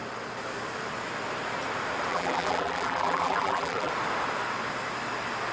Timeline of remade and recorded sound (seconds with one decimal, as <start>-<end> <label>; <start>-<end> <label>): 0.0-2.1 recorded; 2.1-3.9 remade; 3.9-5.5 recorded